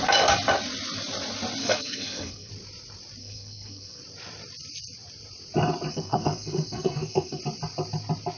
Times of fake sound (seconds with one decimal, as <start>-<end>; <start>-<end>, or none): 1.6-2.5; 3.2-4.0; 5.9-7.4